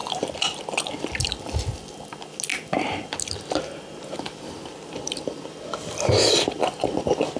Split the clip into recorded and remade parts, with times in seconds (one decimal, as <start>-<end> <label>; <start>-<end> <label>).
0.0-0.6 remade; 0.6-2.5 recorded; 2.5-3.0 remade; 3.0-4.7 recorded; 4.7-7.4 remade